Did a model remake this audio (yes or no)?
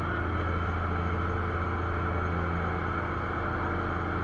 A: no